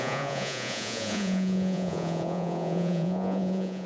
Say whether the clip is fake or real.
fake